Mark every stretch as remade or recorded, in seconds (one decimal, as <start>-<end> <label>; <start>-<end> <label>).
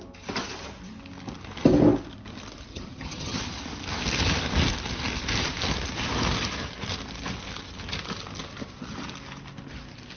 0.0-2.7 recorded; 2.7-3.4 remade; 3.4-10.2 recorded